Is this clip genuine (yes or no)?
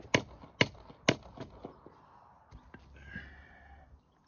yes